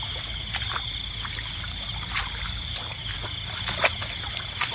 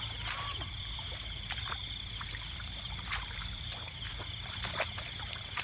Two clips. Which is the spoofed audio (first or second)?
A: second